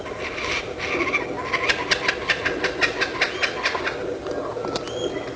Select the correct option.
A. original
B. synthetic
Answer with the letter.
A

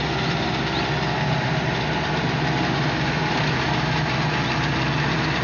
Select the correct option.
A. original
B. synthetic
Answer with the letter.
A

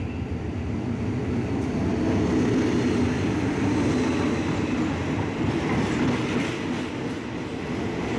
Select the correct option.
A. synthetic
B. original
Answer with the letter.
B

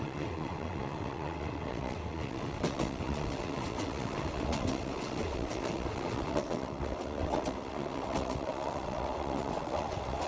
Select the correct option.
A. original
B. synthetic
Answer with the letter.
B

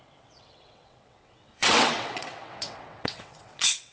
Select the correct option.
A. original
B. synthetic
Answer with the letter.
B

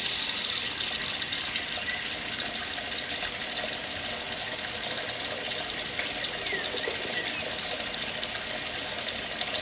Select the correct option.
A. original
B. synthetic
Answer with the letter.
A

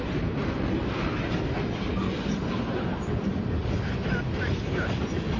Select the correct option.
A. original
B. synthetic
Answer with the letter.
A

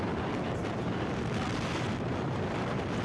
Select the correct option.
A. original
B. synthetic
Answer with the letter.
A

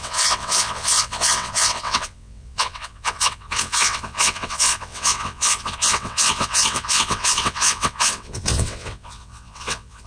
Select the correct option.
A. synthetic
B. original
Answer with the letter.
A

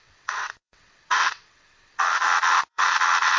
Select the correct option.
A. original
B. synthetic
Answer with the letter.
B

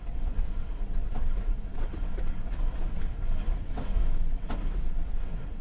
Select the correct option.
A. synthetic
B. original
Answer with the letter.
A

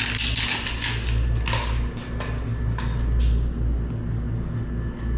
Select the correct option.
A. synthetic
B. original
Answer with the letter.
B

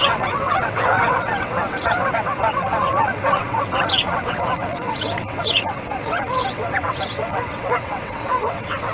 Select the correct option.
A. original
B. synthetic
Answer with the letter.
B